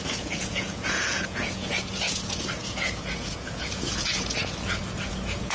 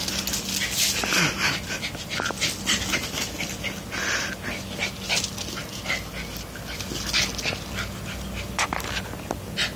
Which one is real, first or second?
second